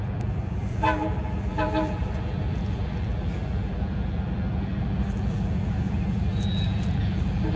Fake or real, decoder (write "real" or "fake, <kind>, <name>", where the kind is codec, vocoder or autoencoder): fake, vocoder, BigVGAN v2